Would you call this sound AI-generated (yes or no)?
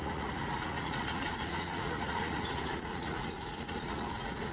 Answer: yes